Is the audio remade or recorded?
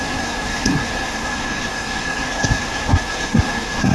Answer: remade